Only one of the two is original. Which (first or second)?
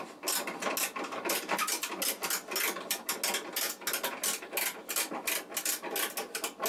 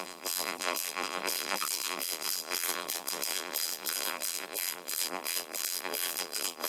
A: first